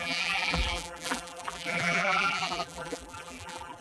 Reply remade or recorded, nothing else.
remade